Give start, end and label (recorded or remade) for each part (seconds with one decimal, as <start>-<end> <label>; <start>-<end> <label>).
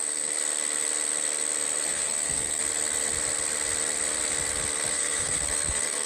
0.0-1.9 recorded; 1.9-2.6 remade; 2.6-4.9 recorded; 4.9-6.1 remade